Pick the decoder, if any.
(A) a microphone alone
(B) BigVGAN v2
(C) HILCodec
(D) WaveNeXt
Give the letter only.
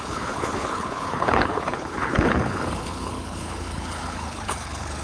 C